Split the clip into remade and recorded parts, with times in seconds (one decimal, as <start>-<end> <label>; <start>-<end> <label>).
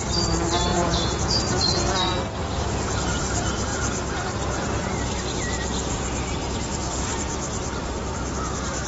0.0-0.7 recorded; 0.7-1.4 remade; 1.4-8.9 recorded